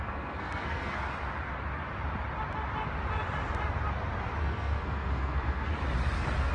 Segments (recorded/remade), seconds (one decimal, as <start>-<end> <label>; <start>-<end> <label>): 0.0-0.9 remade; 0.9-4.4 recorded; 4.4-5.7 remade; 5.7-6.5 recorded